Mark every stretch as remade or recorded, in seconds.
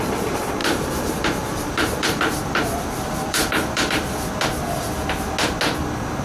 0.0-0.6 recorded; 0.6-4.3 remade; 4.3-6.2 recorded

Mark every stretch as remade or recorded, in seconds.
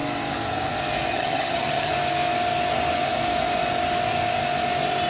0.0-1.1 recorded; 1.1-1.9 remade; 1.9-5.1 recorded